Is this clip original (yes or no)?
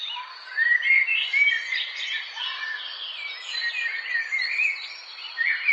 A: yes